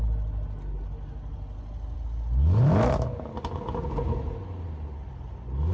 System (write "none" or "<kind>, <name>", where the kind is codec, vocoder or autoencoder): none